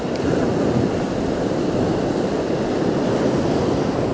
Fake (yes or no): no